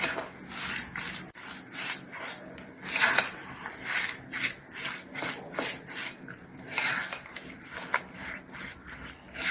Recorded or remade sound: recorded